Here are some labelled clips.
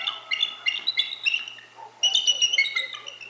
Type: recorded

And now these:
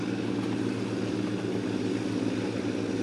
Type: recorded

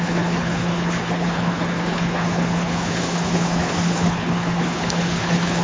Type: remade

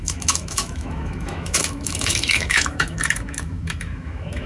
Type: remade